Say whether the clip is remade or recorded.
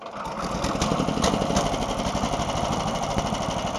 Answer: recorded